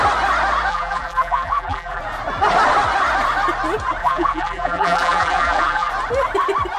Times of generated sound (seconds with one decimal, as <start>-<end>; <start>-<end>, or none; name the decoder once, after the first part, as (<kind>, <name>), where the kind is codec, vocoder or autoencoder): 0.7-2.0 (vocoder, BigVGAN v2); 4.0-5.9